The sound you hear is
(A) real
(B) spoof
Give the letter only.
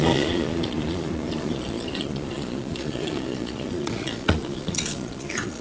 B